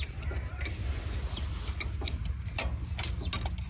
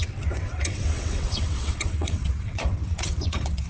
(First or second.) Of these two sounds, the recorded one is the first